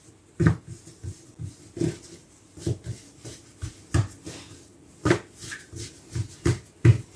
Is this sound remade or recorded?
recorded